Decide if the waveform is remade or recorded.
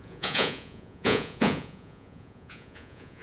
remade